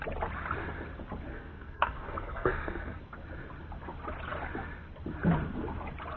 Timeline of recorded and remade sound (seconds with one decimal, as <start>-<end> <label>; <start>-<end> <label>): 0.0-1.3 recorded; 1.3-3.0 remade; 3.0-6.2 recorded